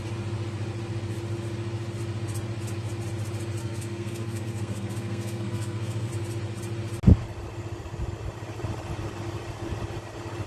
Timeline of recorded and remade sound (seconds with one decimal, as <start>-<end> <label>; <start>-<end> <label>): 0.0-3.6 recorded; 3.6-6.1 remade; 6.1-10.5 recorded